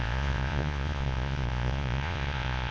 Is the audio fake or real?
fake